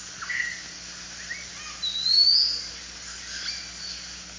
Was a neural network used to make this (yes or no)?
no